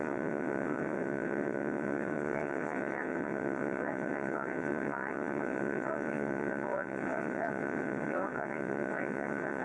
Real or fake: fake